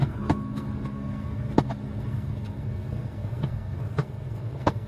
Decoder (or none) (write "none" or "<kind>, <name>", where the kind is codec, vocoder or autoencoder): codec, SNAC